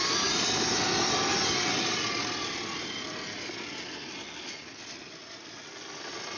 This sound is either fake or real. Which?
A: real